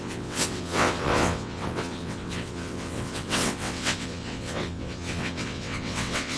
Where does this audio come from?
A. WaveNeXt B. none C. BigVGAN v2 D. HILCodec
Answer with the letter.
A